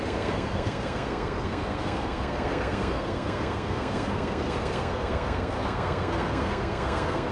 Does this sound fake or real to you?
fake